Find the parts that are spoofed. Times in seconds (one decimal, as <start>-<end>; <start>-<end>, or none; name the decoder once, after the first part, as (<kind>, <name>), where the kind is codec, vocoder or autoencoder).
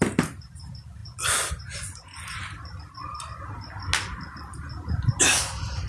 none